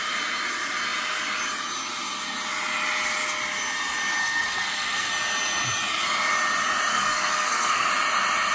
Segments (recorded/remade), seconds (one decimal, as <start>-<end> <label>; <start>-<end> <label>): 0.0-4.2 recorded; 4.2-5.1 remade; 5.1-6.9 recorded; 6.9-7.9 remade; 7.9-8.5 recorded